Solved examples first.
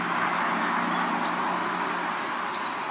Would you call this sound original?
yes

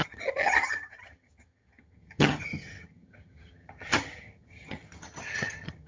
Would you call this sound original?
no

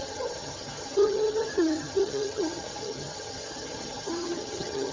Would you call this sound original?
no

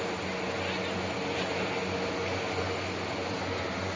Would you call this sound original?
yes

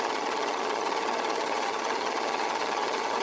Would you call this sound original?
no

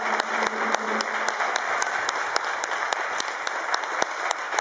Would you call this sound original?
yes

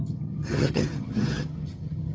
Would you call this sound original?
no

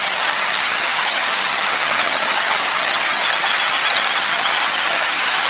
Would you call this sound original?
no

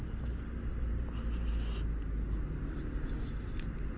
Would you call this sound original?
yes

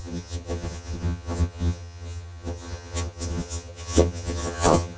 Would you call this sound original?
no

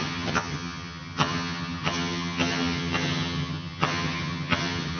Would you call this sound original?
no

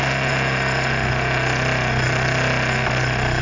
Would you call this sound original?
yes